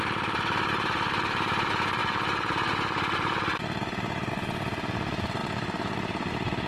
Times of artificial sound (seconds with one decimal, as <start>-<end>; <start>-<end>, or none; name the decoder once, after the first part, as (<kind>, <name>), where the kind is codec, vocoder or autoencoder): none